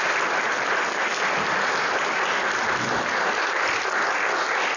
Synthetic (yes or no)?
no